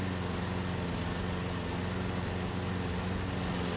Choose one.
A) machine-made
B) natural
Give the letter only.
B